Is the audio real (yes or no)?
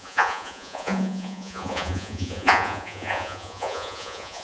no